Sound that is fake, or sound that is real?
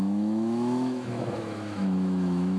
fake